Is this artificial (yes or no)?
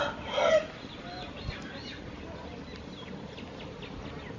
no